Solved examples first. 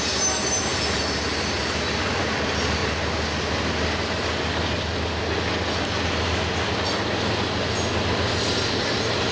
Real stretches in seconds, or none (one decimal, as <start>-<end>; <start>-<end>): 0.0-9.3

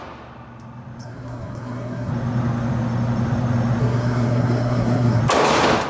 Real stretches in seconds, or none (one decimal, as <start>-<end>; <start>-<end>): 0.0-1.0; 2.1-3.8; 5.2-5.9

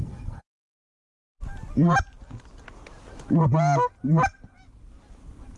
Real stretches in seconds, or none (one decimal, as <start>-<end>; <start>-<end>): 1.4-5.6

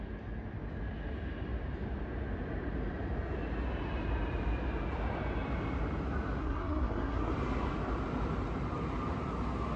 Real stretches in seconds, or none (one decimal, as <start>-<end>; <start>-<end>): 0.0-6.4; 7.3-9.8

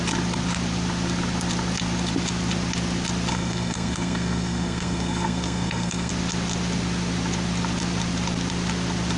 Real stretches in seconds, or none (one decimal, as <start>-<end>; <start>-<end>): 0.0-3.3; 6.1-9.2

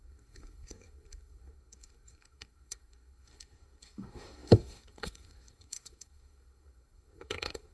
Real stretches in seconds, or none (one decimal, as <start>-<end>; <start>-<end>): none

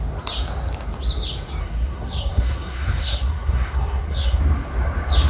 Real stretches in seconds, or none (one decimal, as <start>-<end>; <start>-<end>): 0.0-1.6; 4.4-5.3

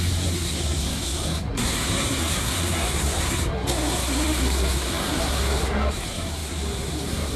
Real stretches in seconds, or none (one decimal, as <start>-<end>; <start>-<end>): none